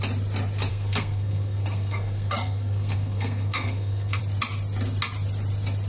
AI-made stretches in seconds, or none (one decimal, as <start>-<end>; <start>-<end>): 0.7-4.2